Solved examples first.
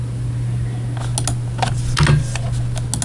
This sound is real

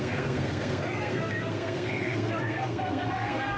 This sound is fake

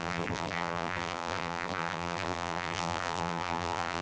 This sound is fake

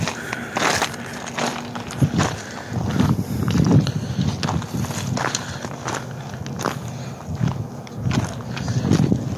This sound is real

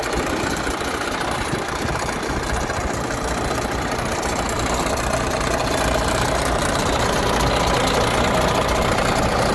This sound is fake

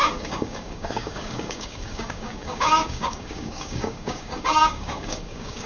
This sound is fake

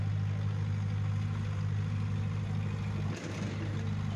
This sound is real